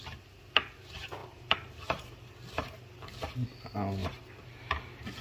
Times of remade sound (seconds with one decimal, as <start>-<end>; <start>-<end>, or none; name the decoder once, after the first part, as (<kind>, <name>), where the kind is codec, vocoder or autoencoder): 1.2-2.3 (vocoder, BigVGAN v2); 4.0-4.6